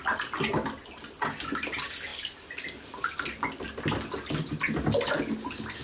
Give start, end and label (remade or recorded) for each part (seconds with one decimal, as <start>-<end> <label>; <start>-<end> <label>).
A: 0.0-5.8 recorded